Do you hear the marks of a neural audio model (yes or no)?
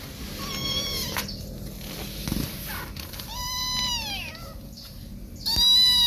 no